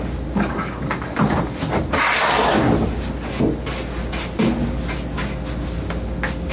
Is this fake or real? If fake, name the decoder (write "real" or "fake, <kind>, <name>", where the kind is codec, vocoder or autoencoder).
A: real